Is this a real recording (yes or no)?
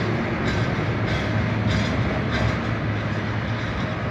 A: yes